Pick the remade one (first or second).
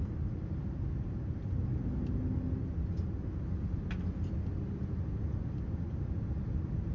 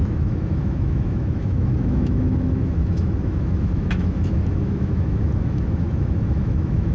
second